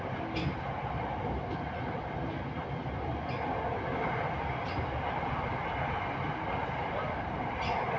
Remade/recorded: recorded